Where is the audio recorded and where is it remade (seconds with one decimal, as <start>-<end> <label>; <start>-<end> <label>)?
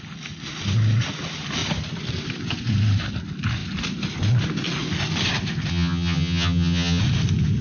0.0-5.7 recorded; 5.7-7.0 remade; 7.0-7.6 recorded